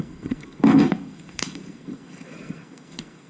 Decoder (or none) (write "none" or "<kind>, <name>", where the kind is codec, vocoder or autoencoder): codec, SNAC